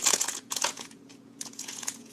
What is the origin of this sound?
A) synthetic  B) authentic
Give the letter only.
A